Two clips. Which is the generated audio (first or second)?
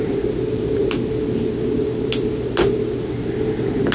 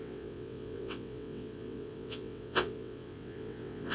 second